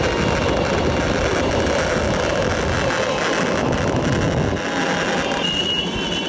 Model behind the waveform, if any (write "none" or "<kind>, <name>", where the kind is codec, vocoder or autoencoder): none